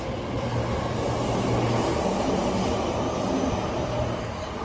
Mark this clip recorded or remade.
recorded